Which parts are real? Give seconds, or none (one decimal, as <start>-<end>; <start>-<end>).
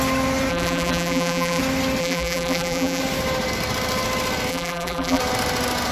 0.0-0.5; 1.6-2.0; 3.0-4.5; 5.2-5.9